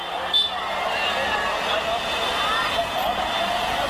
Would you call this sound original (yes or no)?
yes